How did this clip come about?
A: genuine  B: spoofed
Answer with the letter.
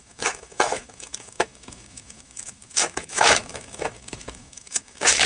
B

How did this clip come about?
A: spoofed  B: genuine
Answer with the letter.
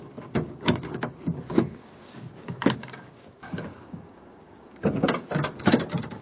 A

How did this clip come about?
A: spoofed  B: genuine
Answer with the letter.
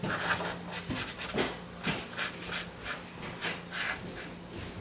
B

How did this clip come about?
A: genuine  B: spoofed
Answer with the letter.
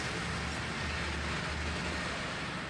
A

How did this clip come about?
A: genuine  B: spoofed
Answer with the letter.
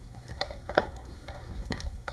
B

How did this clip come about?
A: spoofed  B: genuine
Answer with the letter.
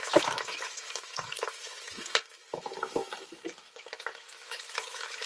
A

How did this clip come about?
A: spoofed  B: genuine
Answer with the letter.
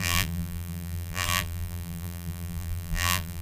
A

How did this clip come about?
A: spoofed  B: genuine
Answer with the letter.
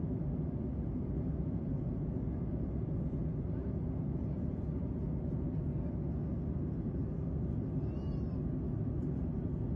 B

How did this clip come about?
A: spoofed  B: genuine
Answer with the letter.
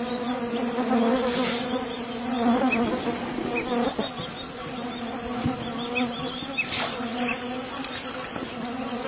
B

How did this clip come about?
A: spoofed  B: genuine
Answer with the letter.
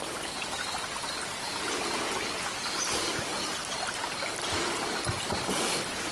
B